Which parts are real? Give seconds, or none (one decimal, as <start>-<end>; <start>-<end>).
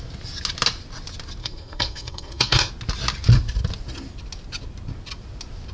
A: 0.0-1.4; 2.7-5.7